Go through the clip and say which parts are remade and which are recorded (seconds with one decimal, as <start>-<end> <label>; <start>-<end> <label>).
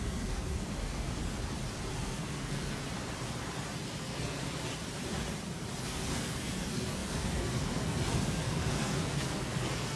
0.0-1.2 remade; 1.2-1.9 recorded; 1.9-2.8 remade; 2.8-4.0 recorded; 4.0-4.4 remade; 4.4-5.8 recorded; 5.8-10.0 remade